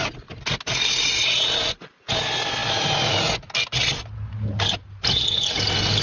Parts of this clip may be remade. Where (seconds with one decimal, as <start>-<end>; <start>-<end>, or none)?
none